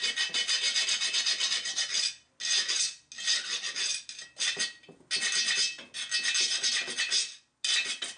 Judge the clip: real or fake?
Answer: real